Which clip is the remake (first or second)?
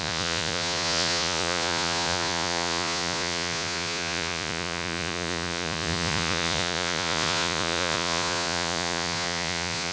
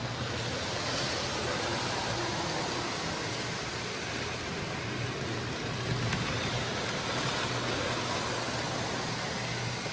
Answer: first